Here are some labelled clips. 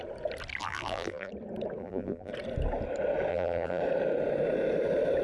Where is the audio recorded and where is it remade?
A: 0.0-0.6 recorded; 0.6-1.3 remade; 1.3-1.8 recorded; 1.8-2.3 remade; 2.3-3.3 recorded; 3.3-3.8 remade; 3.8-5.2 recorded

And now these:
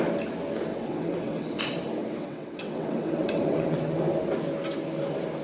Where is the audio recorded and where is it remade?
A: 0.0-0.7 recorded; 0.7-1.6 remade; 1.6-2.0 recorded; 2.0-4.0 remade; 4.0-5.4 recorded

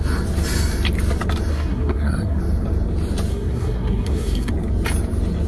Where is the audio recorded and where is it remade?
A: 0.0-1.5 recorded; 1.5-2.4 remade; 2.4-3.3 recorded; 3.3-4.5 remade; 4.5-5.5 recorded

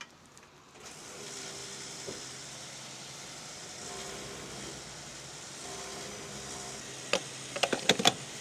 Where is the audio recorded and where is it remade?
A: 0.0-1.6 recorded; 1.6-3.5 remade; 3.5-8.4 recorded

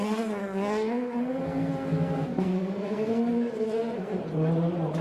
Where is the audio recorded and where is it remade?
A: 0.0-4.1 remade; 4.1-5.0 recorded

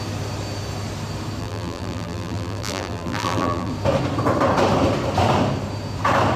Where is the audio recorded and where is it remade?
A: 0.0-1.4 recorded; 1.4-3.7 remade; 3.7-6.4 recorded